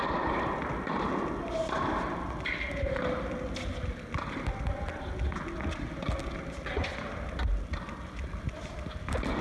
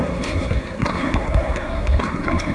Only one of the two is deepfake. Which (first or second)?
second